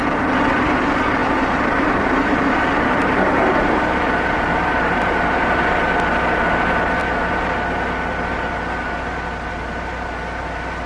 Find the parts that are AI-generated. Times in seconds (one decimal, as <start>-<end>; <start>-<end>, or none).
1.2-5.9